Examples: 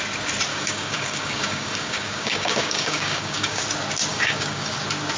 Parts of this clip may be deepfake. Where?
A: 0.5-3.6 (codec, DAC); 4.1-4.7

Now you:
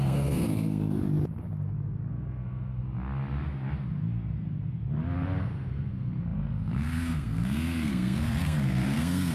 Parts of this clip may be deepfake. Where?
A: 0.0-1.0 (codec, SNAC); 2.1-2.8; 5.4-9.3

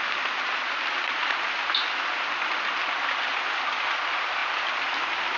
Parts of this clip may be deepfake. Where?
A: none

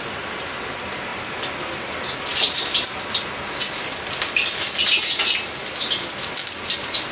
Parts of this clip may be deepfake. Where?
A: none

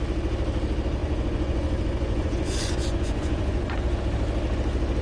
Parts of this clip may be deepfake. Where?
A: 1.0-4.0 (vocoder, Vocos)